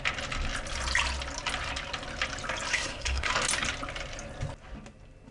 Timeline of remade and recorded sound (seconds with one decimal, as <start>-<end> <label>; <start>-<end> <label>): 0.0-2.7 recorded; 2.7-3.3 remade; 3.3-5.3 recorded